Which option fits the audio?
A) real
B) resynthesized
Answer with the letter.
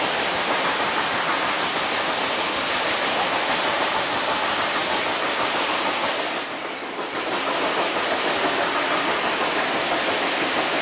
A